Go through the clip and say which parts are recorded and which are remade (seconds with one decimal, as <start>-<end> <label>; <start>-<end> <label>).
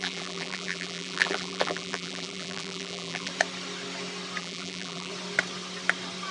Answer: 0.0-3.3 remade; 3.3-4.4 recorded; 4.4-5.1 remade; 5.1-6.3 recorded